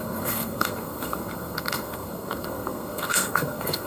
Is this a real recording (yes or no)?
no